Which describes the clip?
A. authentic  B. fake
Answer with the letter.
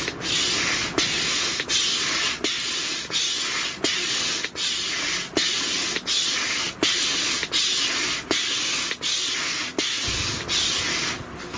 A